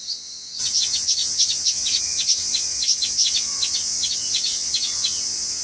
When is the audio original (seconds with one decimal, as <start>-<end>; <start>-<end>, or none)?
none